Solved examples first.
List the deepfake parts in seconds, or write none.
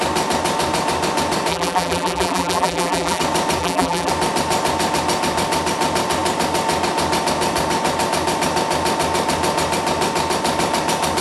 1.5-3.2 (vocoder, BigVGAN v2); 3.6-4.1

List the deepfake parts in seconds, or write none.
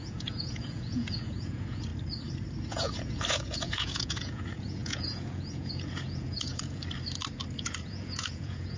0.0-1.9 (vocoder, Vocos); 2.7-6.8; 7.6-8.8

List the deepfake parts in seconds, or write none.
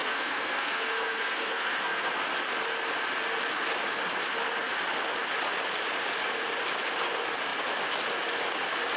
0.0-2.1 (codec, SNAC)